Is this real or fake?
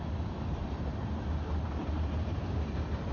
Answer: real